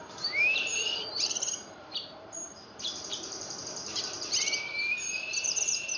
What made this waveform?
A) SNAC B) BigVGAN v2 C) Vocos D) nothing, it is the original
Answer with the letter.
B